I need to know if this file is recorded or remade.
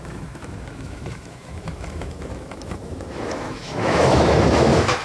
remade